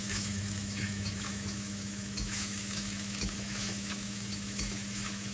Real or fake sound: fake